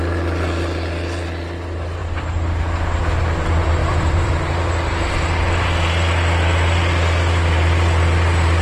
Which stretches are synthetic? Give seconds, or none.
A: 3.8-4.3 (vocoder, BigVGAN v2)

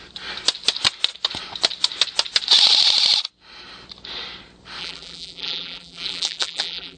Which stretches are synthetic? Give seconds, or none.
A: 4.8-7.0 (vocoder, BigVGAN v2)

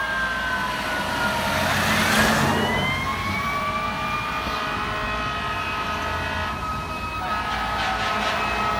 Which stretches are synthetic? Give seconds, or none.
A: 3.1-4.3 (vocoder, BigVGAN v2)

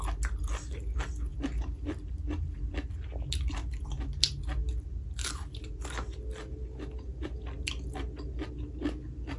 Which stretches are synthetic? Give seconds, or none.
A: 1.3-2.1 (vocoder, BigVGAN v2)

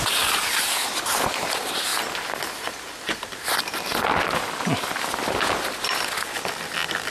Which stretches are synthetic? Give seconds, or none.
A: none

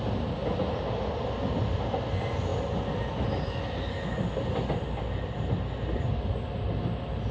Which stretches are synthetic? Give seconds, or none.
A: none

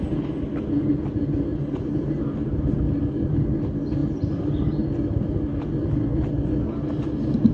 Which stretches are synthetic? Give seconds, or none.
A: 1.5-2.2 (vocoder, BigVGAN v2)